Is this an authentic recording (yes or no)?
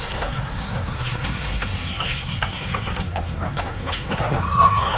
no